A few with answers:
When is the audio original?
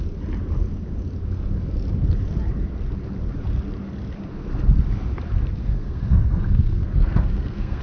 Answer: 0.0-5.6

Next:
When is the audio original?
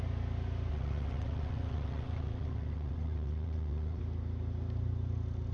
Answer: 0.0-0.7; 4.0-5.5